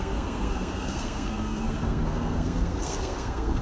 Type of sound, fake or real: fake